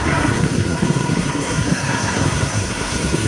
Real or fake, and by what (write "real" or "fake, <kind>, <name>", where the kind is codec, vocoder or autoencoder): fake, codec, SNAC